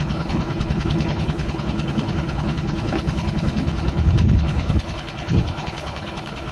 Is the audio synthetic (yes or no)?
yes